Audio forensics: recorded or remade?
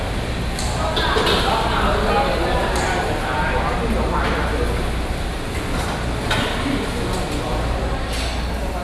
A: recorded